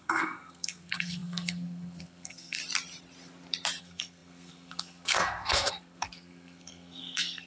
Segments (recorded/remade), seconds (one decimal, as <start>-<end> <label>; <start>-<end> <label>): 0.0-2.6 remade; 2.6-3.8 recorded; 3.8-7.5 remade